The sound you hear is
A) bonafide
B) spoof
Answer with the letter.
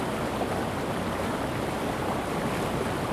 A